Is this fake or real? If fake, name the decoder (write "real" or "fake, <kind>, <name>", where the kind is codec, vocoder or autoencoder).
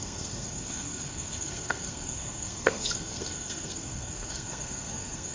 fake, codec, SNAC